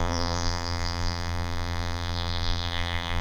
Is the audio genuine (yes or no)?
no